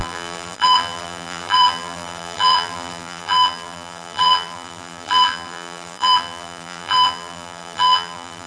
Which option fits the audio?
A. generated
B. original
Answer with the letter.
A